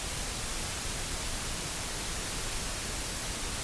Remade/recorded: recorded